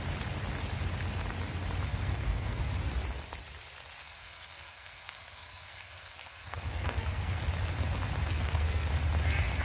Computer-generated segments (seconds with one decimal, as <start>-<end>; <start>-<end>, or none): 1.9-2.6; 4.0-7.4; 8.3-8.9